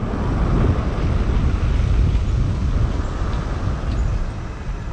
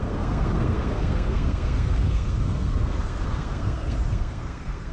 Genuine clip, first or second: first